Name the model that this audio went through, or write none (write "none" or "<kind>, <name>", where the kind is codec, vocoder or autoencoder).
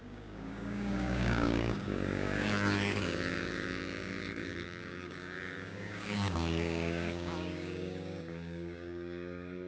codec, DAC